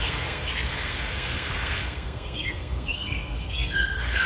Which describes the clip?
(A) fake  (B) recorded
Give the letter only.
A